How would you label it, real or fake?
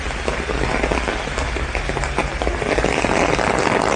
real